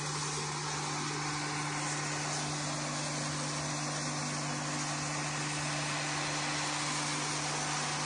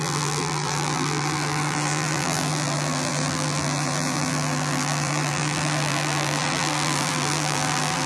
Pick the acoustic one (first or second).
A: first